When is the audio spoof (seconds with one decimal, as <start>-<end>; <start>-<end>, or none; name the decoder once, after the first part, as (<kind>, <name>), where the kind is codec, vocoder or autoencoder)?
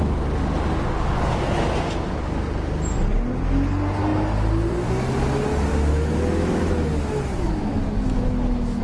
5.7-8.8 (autoencoder, DAC-VAE)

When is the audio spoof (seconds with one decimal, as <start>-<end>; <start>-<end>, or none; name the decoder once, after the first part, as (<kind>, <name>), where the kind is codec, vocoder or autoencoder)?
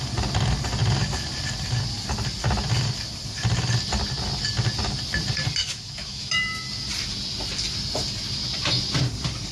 5.6-6.7 (autoencoder, DAC-VAE)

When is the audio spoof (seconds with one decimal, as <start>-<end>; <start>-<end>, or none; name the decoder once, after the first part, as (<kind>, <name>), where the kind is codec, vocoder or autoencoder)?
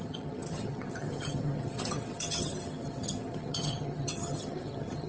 0.0-5.1 (vocoder, HiFi-GAN)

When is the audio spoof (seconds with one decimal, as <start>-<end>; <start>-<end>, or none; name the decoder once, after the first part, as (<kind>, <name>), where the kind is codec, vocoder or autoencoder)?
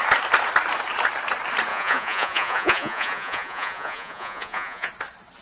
1.7-4.9 (vocoder, Vocos)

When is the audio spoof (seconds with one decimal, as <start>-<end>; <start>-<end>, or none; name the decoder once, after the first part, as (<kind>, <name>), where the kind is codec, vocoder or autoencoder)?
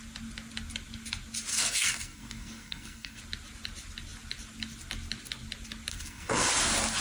1.5-3.2 (codec, SNAC); 5.9-6.5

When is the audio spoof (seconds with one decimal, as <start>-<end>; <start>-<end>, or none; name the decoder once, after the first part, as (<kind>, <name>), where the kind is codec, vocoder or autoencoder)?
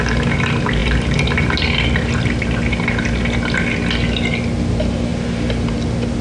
none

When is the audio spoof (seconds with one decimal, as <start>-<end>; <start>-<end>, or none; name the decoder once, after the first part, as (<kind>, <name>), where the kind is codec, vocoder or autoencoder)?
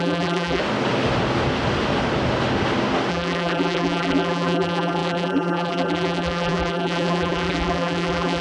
0.0-0.6 (vocoder, BigVGAN v2); 3.1-8.4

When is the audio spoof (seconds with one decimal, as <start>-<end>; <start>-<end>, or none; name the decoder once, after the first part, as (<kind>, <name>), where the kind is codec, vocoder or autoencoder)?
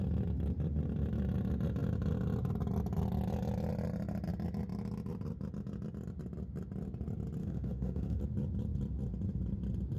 7.4-8.2 (autoencoder, DAC-VAE)